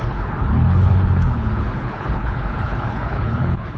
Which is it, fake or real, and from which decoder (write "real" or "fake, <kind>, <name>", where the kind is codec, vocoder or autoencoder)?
fake, codec, HILCodec